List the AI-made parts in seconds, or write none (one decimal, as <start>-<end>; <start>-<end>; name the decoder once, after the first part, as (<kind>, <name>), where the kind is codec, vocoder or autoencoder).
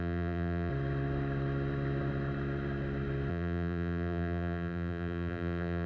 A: 0.0-0.7 (vocoder, BigVGAN v2); 3.3-5.9